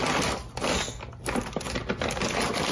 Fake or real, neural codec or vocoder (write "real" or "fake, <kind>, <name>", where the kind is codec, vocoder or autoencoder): real